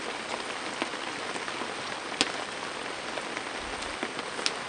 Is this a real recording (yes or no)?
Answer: yes